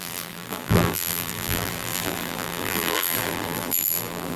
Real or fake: fake